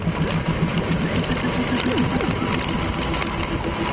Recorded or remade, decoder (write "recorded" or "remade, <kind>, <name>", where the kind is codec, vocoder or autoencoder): recorded